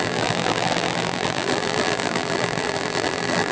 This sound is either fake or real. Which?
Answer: fake